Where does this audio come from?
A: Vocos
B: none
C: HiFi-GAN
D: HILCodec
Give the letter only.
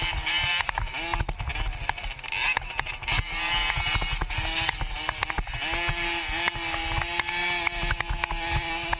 B